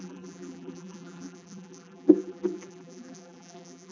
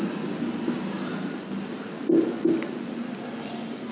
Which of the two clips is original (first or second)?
second